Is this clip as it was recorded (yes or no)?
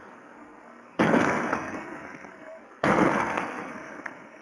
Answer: no